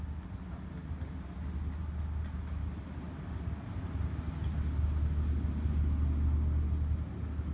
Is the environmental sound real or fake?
real